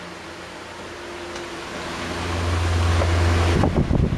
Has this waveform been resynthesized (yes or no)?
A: no